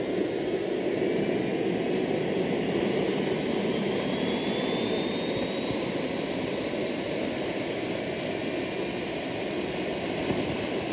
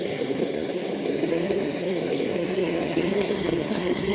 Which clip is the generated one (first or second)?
second